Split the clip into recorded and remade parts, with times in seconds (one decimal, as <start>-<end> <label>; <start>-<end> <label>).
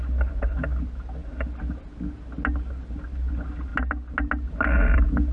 0.0-5.3 recorded